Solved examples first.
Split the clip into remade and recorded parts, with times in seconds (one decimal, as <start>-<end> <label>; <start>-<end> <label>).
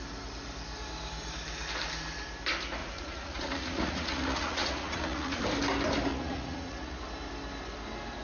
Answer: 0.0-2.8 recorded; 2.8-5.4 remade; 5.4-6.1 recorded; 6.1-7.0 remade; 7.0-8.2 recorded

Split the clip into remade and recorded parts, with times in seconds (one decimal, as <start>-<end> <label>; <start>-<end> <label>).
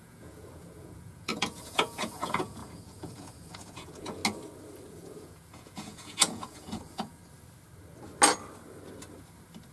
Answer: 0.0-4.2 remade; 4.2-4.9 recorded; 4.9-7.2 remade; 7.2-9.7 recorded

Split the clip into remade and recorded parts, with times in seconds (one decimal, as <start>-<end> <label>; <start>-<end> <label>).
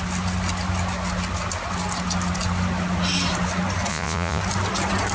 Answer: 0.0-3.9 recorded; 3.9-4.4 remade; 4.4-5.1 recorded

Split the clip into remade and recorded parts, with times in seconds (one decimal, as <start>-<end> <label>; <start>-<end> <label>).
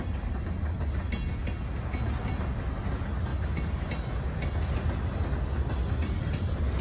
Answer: 0.0-6.8 recorded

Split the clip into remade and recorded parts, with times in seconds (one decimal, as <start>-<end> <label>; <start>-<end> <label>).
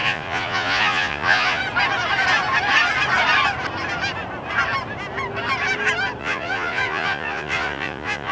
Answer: 0.0-1.6 remade; 1.6-6.2 recorded; 6.2-8.3 remade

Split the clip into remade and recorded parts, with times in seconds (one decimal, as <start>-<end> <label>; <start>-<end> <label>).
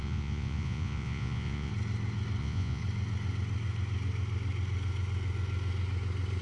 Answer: 0.0-1.7 remade; 1.7-2.4 recorded; 2.4-2.8 remade; 2.8-6.4 recorded